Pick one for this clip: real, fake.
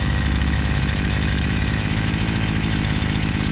fake